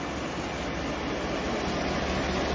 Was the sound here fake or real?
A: real